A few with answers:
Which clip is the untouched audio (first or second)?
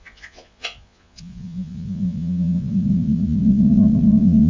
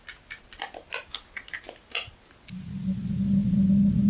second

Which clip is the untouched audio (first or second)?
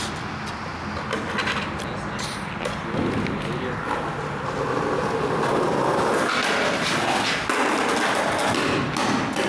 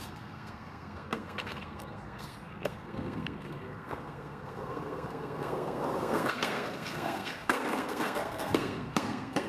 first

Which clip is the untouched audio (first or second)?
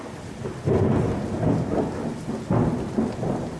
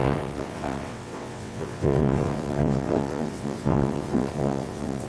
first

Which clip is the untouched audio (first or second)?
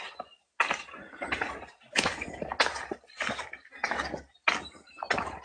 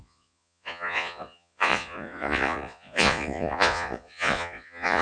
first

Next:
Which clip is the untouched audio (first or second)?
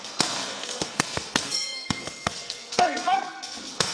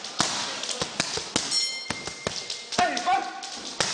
second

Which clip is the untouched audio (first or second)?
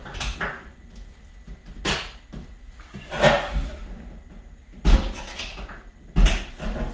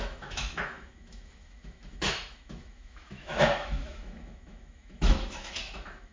first